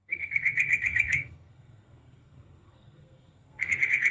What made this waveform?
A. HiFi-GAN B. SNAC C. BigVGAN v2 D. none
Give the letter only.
B